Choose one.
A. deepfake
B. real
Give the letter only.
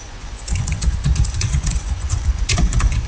A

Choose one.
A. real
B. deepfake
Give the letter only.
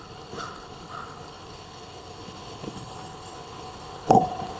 B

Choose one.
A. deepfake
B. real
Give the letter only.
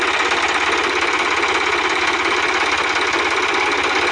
B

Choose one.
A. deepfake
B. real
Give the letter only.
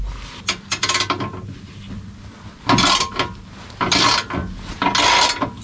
B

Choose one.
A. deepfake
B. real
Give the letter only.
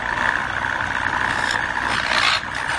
B